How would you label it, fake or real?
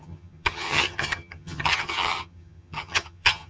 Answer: fake